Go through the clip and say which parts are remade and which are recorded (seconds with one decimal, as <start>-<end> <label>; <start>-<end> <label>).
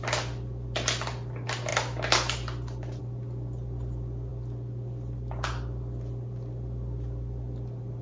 0.0-8.0 recorded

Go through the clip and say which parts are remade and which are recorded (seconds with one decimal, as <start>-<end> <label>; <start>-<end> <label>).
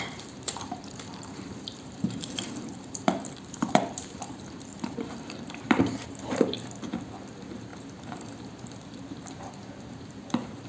0.0-10.7 remade